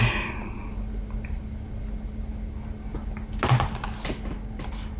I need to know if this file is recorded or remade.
recorded